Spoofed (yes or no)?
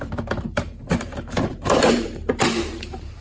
yes